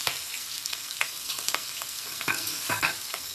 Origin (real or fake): fake